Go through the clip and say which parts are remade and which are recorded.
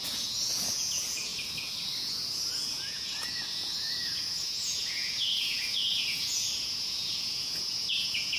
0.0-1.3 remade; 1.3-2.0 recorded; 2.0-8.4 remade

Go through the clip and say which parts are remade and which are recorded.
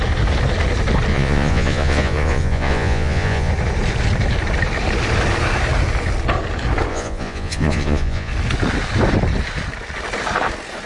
0.0-1.1 recorded; 1.1-3.5 remade; 3.5-6.9 recorded; 6.9-8.3 remade; 8.3-10.9 recorded